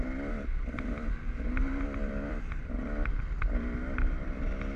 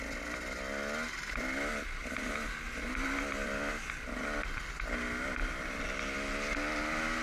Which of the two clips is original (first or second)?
second